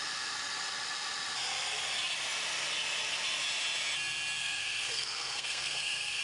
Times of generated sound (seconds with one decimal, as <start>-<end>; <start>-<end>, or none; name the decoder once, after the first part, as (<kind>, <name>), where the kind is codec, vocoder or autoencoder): 4.4-6.2 (codec, SNAC)